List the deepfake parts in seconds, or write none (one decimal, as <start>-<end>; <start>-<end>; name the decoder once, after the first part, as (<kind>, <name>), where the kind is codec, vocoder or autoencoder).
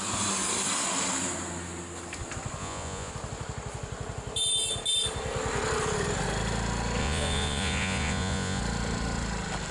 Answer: 2.6-3.1 (vocoder, Vocos); 7.0-8.6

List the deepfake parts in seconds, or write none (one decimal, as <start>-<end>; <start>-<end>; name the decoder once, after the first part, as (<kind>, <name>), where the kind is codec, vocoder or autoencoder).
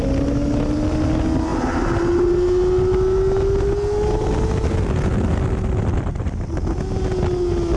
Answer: none